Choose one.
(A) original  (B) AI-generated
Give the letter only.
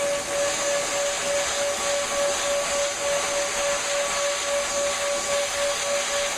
A